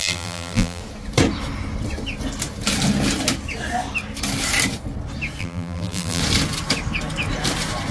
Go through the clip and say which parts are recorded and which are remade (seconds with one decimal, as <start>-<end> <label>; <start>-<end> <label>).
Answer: 0.0-0.8 remade; 0.8-5.4 recorded; 5.4-6.2 remade; 6.2-7.9 recorded